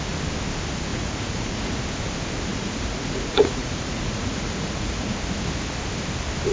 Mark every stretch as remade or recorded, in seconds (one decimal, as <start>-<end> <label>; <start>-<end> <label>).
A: 0.0-0.9 recorded; 0.9-1.8 remade; 1.8-2.5 recorded; 2.5-5.1 remade; 5.1-6.5 recorded